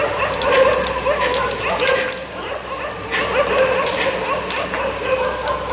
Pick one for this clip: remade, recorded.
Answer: recorded